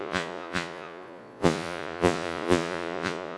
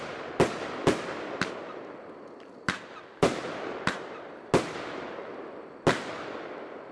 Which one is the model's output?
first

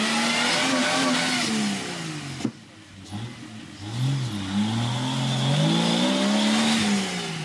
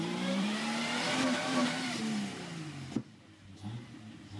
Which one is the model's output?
second